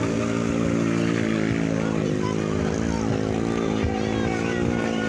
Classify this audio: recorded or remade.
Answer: recorded